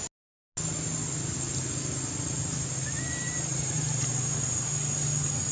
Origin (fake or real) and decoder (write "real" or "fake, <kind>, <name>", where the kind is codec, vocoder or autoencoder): real